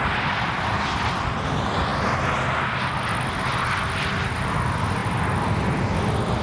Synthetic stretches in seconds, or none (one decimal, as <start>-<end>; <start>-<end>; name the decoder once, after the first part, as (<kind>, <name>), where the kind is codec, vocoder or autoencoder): none